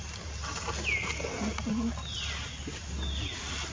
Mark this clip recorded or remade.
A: recorded